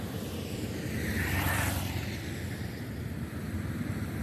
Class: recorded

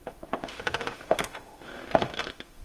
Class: remade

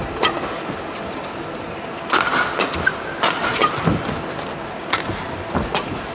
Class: recorded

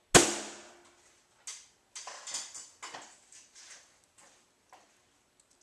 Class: recorded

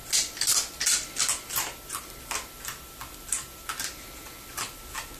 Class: recorded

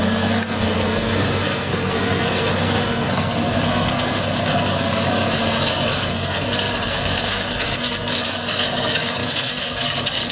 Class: remade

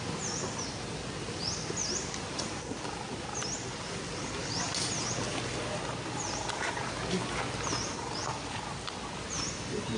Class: recorded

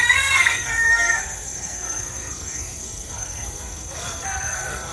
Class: remade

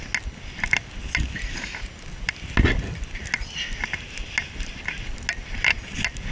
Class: recorded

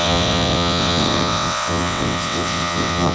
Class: remade